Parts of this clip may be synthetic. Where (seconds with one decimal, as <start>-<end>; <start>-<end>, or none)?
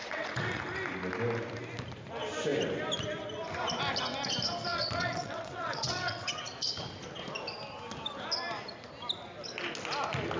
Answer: 0.0-0.6; 4.7-6.4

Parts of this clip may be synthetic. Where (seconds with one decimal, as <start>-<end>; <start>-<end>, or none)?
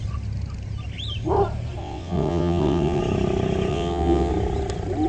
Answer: 1.8-3.0; 3.7-4.3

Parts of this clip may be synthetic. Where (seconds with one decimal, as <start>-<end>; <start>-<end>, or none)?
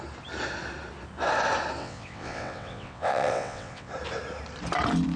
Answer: 1.8-3.9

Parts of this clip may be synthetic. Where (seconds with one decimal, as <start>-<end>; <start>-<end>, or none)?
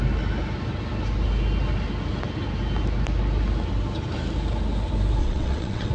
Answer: 5.2-5.9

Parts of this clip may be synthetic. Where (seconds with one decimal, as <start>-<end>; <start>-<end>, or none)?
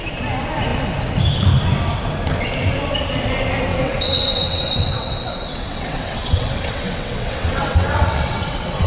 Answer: 3.7-8.9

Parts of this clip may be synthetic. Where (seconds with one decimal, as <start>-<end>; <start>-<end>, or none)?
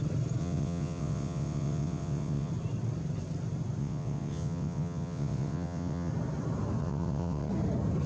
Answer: 0.4-2.5; 3.8-6.1; 6.8-7.5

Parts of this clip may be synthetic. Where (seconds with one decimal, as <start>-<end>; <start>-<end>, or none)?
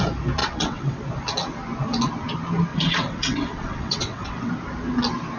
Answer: 0.4-1.0; 2.7-4.5